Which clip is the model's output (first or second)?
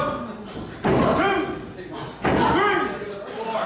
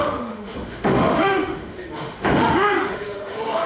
second